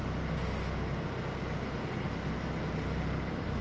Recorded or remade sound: recorded